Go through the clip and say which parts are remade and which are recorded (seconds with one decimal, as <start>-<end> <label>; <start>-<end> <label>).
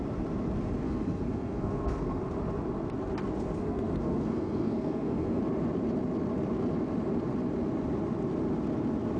0.0-0.8 recorded; 0.8-2.2 remade; 2.2-3.6 recorded; 3.6-5.4 remade; 5.4-9.2 recorded